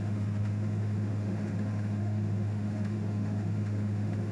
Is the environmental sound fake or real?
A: fake